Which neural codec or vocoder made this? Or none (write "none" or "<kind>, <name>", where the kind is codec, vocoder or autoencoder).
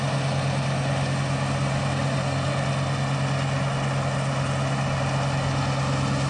none